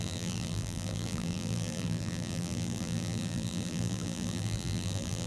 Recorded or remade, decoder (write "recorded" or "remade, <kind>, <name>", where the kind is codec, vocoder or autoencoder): remade, vocoder, BigVGAN v2